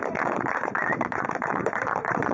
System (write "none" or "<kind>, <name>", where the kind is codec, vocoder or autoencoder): vocoder, Vocos